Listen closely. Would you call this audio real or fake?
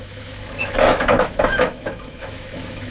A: fake